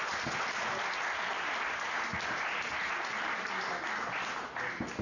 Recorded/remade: recorded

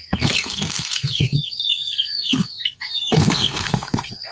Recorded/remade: remade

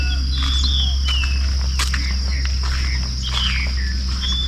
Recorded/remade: recorded